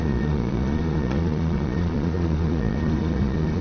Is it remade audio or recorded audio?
remade